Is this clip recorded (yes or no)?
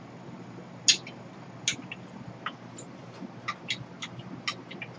yes